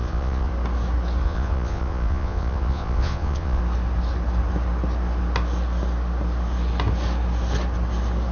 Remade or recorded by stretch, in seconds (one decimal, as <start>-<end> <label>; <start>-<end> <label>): 0.0-0.5 remade; 0.5-1.2 recorded; 1.2-3.6 remade; 3.6-8.3 recorded